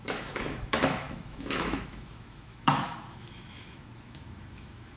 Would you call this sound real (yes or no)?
no